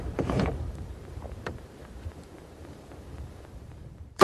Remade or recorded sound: remade